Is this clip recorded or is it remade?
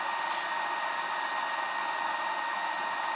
recorded